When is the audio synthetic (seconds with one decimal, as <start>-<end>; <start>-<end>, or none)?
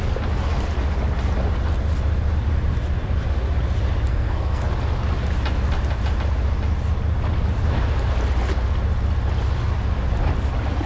4.1-4.7